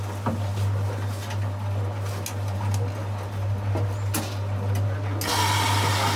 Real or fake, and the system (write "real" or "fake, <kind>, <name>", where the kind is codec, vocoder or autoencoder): real